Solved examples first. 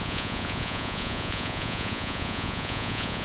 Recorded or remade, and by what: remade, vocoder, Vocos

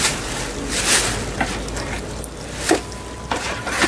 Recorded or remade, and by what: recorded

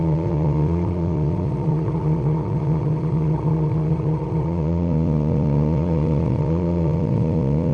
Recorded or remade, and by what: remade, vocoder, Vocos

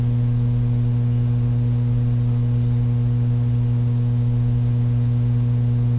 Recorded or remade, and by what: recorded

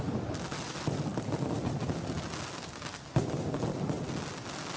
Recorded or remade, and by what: recorded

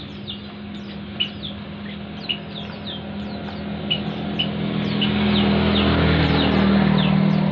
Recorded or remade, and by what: recorded